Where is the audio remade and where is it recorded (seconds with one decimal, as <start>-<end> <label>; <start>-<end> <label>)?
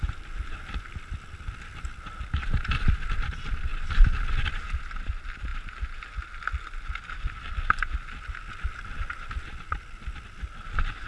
0.0-11.1 recorded